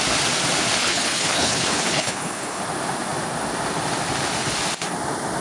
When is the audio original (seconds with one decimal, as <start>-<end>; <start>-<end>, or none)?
0.0-0.8; 2.6-5.4